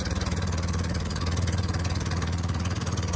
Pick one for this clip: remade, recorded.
remade